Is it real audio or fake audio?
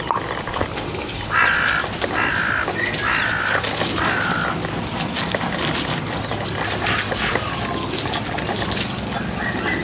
real